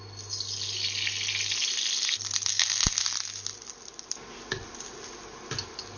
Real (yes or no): yes